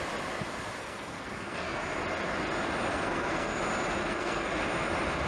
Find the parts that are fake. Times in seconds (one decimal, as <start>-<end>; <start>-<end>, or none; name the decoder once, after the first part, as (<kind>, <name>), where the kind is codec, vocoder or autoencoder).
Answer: 0.8-1.8 (codec, SNAC); 2.9-3.6; 4.0-4.6